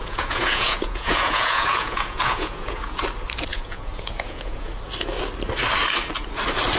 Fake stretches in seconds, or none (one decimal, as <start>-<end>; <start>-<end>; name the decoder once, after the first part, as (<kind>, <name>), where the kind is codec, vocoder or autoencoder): 0.0-3.0 (vocoder, Vocos); 3.5-4.7